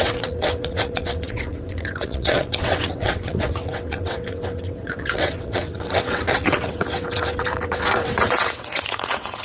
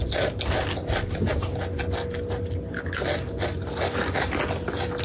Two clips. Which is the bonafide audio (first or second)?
second